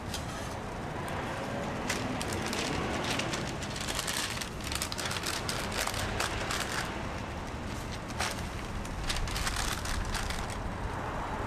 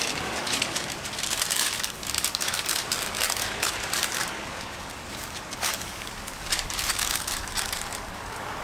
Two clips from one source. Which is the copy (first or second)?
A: second